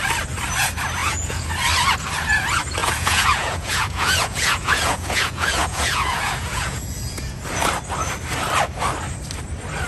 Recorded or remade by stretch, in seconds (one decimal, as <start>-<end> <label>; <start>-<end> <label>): 0.0-1.0 recorded; 1.0-1.5 remade; 1.5-2.8 recorded; 2.8-7.4 remade; 7.4-9.9 recorded